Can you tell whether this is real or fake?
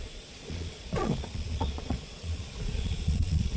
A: fake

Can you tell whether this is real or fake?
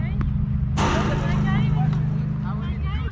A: real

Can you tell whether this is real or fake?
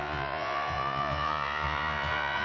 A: fake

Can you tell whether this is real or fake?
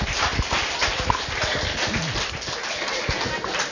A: real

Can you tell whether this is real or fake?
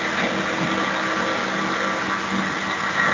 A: real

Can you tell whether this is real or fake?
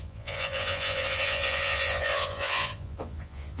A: fake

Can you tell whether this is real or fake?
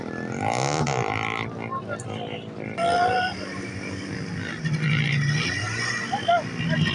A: real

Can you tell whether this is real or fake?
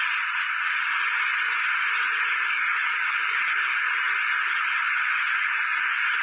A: real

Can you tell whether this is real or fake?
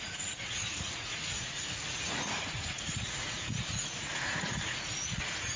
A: fake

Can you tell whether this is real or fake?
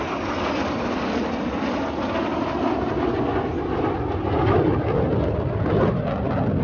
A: real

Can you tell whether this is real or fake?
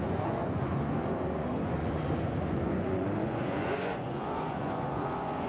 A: fake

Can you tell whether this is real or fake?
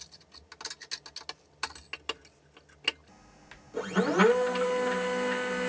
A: real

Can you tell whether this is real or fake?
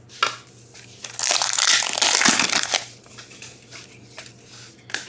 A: real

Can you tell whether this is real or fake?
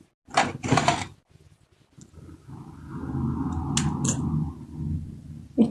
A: real